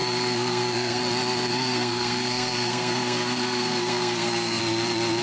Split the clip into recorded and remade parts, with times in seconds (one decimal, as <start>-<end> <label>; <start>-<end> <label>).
0.0-1.0 remade; 1.0-1.5 recorded; 1.5-4.6 remade; 4.6-5.2 recorded